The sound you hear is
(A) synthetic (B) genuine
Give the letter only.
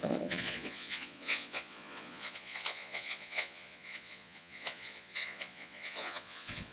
A